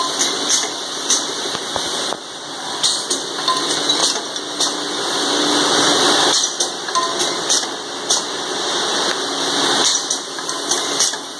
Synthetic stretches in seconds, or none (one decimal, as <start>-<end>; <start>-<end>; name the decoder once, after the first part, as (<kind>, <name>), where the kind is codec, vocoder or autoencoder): none